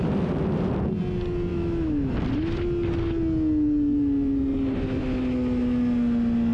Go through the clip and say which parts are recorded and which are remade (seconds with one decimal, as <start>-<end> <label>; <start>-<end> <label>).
0.0-1.5 recorded; 1.5-2.1 remade; 2.1-6.5 recorded